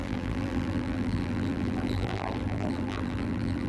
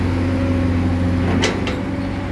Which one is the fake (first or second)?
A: first